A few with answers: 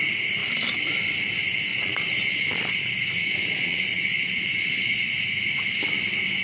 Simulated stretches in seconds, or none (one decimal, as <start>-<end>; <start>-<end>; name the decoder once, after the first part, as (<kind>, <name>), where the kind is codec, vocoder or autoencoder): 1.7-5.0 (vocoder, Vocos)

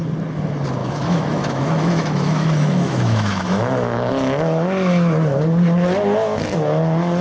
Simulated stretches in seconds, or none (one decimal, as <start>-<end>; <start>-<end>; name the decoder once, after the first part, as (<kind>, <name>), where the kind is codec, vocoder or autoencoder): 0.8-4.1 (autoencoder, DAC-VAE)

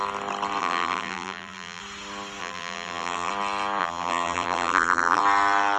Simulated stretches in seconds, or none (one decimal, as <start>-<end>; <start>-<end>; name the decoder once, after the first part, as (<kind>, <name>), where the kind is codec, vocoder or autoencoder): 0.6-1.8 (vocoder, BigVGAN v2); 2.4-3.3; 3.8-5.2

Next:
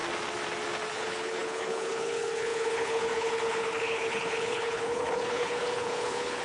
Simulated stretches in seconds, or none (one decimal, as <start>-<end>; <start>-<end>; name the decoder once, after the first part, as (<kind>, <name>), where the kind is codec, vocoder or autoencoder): 0.9-6.4 (codec, HILCodec)

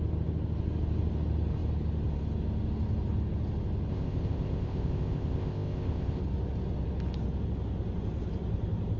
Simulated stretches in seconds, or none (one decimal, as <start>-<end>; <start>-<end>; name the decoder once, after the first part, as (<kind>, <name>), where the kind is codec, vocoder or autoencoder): 3.9-6.2 (codec, ZipCodec)

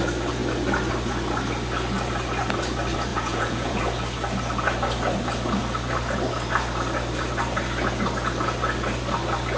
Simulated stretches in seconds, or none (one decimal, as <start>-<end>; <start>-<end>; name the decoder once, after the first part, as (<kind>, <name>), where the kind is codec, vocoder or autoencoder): 3.1-3.8 (vocoder, Vocos)

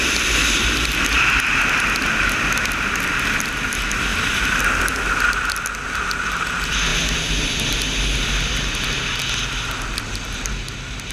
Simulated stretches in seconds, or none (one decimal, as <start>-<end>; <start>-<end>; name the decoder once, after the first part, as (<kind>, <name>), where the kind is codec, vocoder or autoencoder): none